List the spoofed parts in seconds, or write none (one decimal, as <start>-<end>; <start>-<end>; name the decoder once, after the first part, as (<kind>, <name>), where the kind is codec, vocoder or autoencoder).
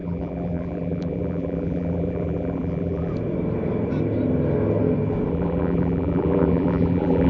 0.0-3.1 (vocoder, BigVGAN v2); 5.3-7.3